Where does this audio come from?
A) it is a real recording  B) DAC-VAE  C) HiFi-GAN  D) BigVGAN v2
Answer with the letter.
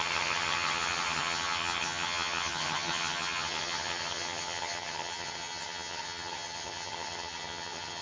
C